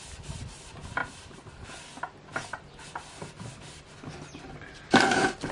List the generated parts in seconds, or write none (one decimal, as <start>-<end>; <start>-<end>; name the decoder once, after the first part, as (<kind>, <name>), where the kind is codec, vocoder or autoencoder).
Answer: none